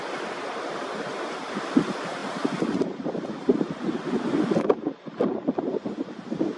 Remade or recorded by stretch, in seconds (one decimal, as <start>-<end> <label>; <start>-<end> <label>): 0.0-1.1 recorded; 1.1-1.6 remade; 1.6-6.6 recorded